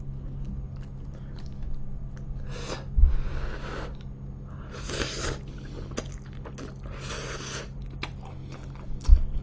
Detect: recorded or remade recorded